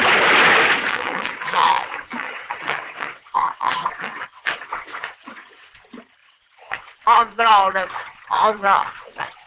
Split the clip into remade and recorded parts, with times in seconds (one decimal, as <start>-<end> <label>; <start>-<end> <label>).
0.0-0.9 recorded; 0.9-5.8 remade; 5.8-6.2 recorded; 6.2-9.5 remade